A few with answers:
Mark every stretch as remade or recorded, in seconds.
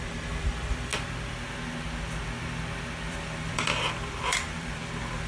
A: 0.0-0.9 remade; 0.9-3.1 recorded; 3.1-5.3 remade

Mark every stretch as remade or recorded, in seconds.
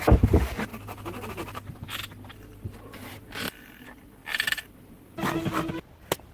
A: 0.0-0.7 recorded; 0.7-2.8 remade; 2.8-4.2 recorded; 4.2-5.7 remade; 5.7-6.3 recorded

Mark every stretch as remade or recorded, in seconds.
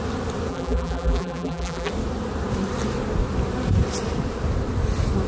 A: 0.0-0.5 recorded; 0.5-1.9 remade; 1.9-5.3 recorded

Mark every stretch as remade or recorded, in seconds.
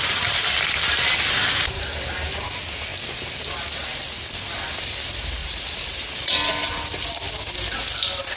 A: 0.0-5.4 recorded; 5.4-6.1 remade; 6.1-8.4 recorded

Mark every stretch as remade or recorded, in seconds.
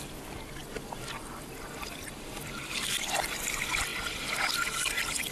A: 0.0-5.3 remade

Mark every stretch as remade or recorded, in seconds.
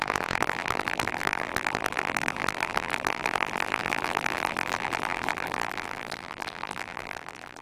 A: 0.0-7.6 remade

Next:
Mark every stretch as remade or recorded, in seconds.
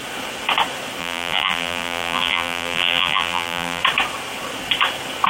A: 0.0-1.0 recorded; 1.0-3.8 remade; 3.8-5.3 recorded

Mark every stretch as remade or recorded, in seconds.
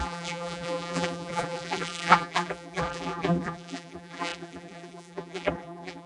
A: 0.0-6.1 remade